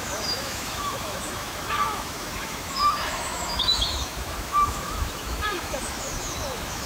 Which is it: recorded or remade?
remade